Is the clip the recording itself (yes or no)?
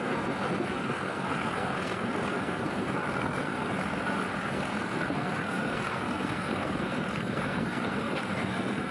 no